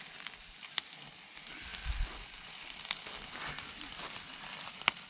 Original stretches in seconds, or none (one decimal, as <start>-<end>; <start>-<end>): 0.0-5.1